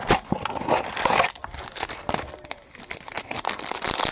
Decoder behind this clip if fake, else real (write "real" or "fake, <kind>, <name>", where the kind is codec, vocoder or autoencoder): real